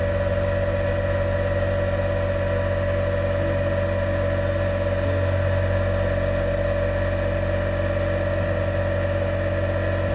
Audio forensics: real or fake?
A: real